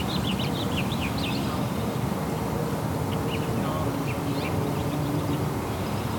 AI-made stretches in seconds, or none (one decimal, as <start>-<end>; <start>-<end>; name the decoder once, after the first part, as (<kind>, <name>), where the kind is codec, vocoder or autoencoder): 0.0-1.3 (vocoder, BigVGAN v2); 4.8-6.2